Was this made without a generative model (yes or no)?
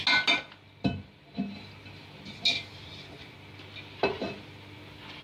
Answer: yes